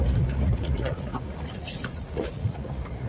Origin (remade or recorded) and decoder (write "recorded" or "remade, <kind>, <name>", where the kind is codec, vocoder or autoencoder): remade, vocoder, Vocos